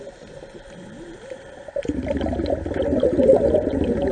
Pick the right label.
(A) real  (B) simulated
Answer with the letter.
B